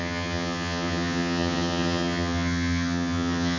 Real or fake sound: fake